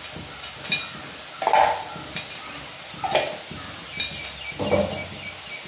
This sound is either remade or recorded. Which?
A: recorded